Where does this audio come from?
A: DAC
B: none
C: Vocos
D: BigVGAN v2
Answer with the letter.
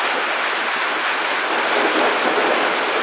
B